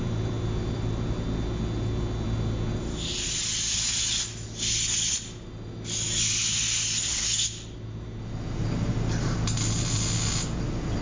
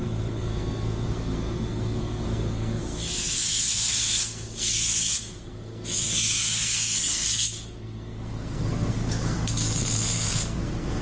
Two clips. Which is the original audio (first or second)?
first